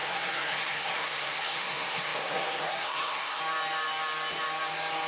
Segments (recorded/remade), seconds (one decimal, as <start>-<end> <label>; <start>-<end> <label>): 0.0-3.4 remade; 3.4-5.1 recorded